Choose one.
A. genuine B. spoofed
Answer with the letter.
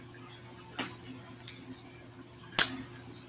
A